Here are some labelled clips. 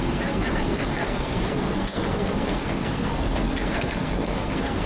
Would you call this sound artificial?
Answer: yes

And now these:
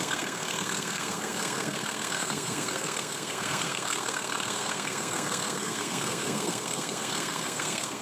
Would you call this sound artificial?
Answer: yes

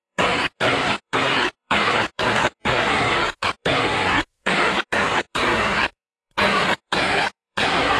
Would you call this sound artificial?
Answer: yes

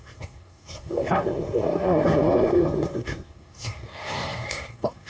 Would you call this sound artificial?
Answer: yes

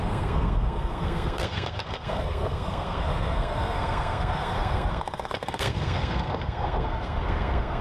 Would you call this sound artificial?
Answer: yes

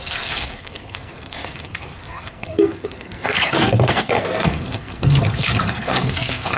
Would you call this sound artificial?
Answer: yes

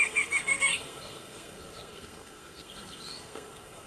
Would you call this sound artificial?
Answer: yes